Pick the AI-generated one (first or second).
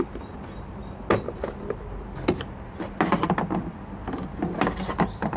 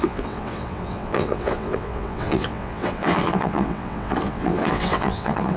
second